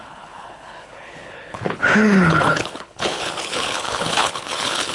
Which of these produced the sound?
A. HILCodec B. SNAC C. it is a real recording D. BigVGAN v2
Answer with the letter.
A